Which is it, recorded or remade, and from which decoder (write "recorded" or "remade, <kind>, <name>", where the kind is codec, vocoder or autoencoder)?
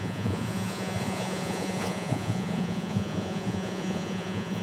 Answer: remade, vocoder, Vocos